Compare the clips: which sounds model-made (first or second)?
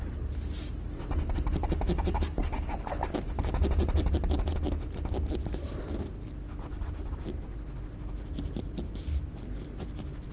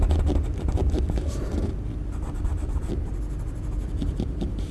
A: second